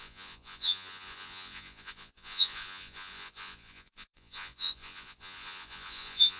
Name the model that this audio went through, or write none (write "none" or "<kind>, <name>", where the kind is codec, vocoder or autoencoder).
vocoder, Vocos